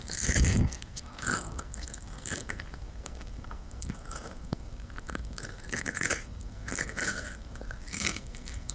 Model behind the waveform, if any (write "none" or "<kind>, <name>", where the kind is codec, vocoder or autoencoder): codec, SNAC